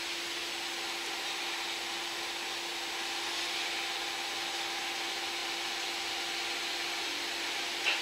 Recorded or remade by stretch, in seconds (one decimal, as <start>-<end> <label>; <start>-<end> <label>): 0.0-8.0 recorded